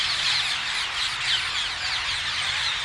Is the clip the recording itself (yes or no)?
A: yes